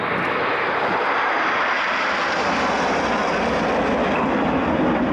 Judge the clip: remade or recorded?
recorded